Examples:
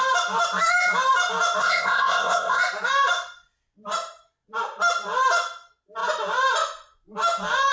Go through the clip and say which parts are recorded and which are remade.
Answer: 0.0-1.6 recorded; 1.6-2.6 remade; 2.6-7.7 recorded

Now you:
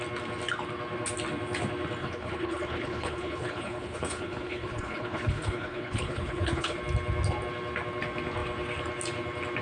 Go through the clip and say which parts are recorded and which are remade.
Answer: 0.0-2.0 recorded; 2.0-6.8 remade; 6.8-9.6 recorded

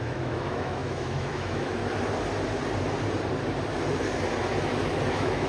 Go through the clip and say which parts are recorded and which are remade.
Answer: 0.0-1.8 remade; 1.8-5.1 recorded; 5.1-5.5 remade

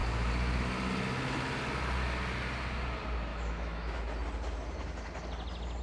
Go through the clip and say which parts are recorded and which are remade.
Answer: 0.0-3.3 recorded; 3.3-4.0 remade; 4.0-5.8 recorded

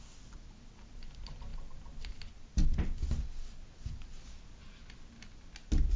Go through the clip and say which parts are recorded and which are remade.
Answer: 0.0-6.0 recorded

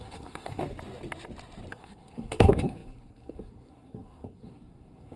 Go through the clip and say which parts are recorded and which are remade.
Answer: 0.0-0.6 remade; 0.6-1.7 recorded; 1.7-5.2 remade

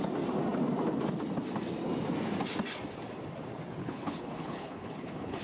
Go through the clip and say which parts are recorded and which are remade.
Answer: 0.0-3.8 recorded; 3.8-5.4 remade